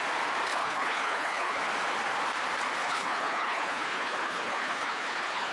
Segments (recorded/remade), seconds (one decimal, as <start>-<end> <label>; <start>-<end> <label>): 0.0-0.5 recorded; 0.5-1.6 remade; 1.6-2.8 recorded; 2.8-5.5 remade